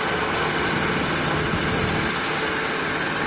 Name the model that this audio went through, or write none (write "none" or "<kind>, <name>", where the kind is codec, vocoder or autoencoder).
none